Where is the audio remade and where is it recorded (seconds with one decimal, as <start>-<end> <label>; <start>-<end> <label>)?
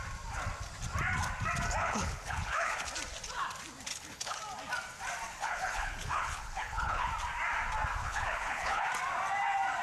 0.0-1.8 recorded; 1.8-2.9 remade; 2.9-3.9 recorded; 3.9-4.4 remade; 4.4-5.3 recorded; 5.3-7.1 remade; 7.1-8.0 recorded; 8.0-8.8 remade; 8.8-9.8 recorded